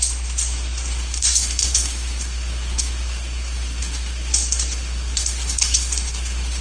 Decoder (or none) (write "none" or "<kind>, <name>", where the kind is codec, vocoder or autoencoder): codec, SNAC